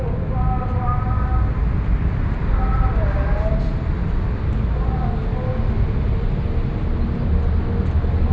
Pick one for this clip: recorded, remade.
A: recorded